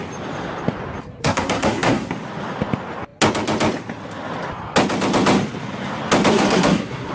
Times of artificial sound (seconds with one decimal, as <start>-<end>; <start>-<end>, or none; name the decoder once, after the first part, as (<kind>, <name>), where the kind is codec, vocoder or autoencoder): 1.2-2.1 (codec, SNAC); 6.3-7.1